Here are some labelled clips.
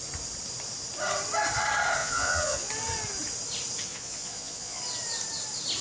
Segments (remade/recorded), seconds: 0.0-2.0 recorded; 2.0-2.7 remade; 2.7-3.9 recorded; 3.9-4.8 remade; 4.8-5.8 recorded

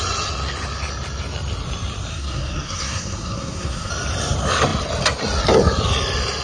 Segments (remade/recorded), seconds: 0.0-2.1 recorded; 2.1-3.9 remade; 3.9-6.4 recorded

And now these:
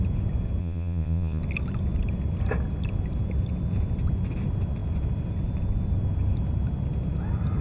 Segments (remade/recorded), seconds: 0.0-0.6 recorded; 0.6-1.4 remade; 1.4-7.6 recorded

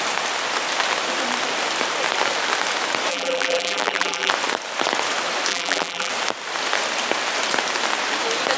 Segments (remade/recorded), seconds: 0.0-3.1 recorded; 3.1-4.3 remade; 4.3-5.5 recorded; 5.5-6.1 remade; 6.1-8.6 recorded